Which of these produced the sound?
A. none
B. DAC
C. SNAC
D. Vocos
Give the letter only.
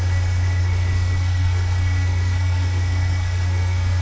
C